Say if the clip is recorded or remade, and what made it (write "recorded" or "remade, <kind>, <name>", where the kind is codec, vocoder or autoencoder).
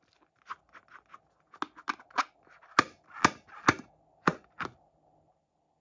recorded